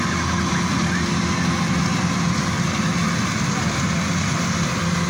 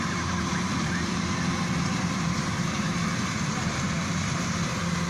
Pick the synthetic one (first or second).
second